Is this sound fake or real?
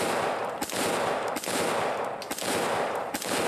real